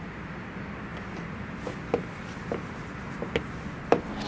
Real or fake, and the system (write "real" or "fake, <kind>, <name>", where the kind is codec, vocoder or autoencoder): real